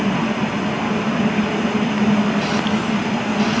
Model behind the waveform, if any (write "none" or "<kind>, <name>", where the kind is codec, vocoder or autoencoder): none